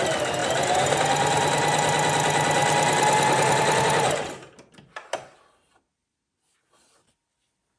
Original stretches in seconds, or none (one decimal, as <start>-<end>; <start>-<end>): 0.0-0.4; 1.0-7.8